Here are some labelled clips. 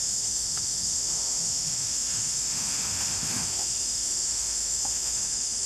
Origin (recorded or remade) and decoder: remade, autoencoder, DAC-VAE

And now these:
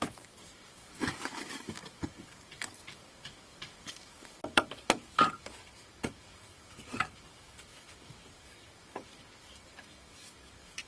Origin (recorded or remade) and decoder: remade, codec, DAC